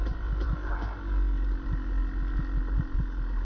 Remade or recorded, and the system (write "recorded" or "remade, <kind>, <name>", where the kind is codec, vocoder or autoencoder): recorded